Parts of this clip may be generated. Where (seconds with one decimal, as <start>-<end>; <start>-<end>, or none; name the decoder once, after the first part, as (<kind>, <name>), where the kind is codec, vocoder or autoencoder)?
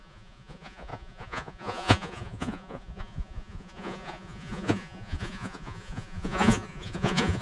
0.0-7.4 (vocoder, Vocos)